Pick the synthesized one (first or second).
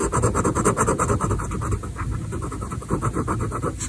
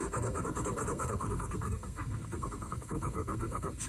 second